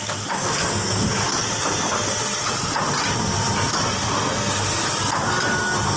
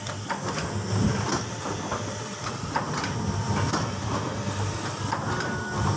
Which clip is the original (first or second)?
first